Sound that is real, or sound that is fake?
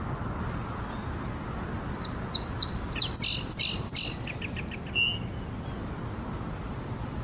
real